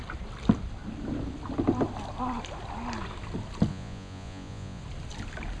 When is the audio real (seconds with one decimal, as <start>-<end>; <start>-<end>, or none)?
0.0-3.7; 4.8-5.6